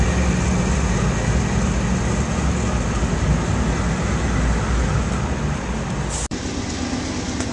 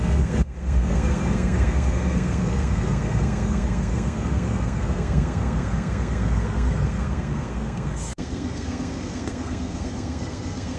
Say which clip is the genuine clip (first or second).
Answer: first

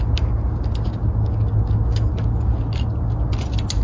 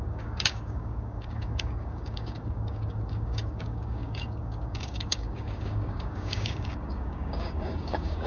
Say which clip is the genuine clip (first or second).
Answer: first